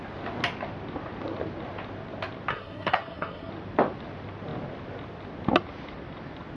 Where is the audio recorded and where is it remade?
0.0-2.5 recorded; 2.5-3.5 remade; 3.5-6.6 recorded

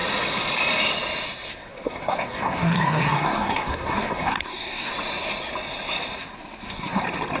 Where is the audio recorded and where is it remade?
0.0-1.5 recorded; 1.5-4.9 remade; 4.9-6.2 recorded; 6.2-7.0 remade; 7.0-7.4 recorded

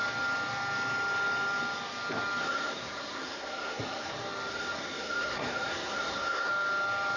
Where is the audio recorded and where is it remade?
0.0-2.4 recorded; 2.4-4.1 remade; 4.1-4.5 recorded; 4.5-6.5 remade; 6.5-7.2 recorded

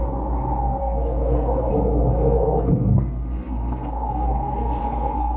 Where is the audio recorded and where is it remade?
0.0-0.8 recorded; 0.8-1.7 remade; 1.7-2.1 recorded; 2.1-5.4 remade

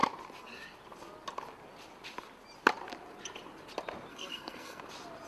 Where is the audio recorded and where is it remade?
0.0-4.1 recorded; 4.1-4.8 remade; 4.8-5.3 recorded

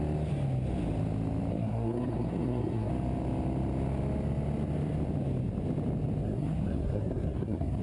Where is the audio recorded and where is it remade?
0.0-1.5 recorded; 1.5-2.9 remade; 2.9-6.2 recorded; 6.2-7.8 remade